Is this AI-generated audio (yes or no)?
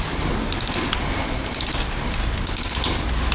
no